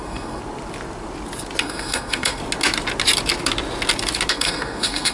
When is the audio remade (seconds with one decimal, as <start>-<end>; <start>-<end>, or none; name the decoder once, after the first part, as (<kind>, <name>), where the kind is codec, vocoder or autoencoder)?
0.0-0.4 (codec, SNAC); 1.6-2.4; 4.3-5.1